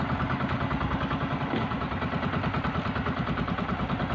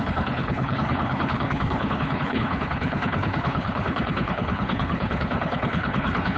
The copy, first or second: second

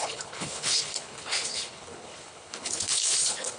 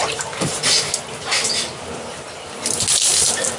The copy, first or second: first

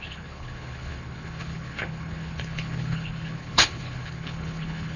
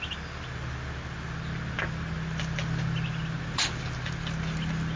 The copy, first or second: first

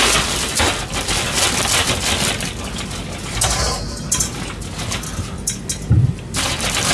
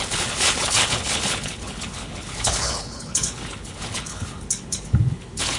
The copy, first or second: second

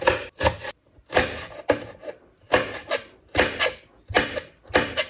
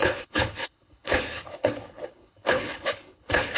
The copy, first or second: second